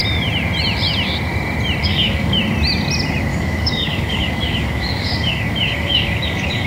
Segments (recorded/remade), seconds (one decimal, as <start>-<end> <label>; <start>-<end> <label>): 0.0-1.8 recorded; 1.8-2.4 remade; 2.4-3.3 recorded; 3.3-6.7 remade